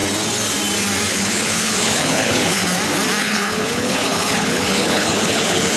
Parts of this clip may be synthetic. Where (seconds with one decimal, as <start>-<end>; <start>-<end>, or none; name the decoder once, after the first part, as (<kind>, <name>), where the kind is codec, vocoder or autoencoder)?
1.1-2.6 (codec, HILCodec); 3.2-5.8